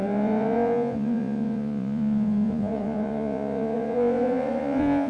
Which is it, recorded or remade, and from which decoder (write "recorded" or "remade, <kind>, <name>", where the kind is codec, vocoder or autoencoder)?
remade, vocoder, Vocos